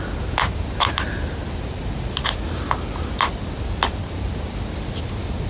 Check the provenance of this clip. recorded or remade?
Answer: recorded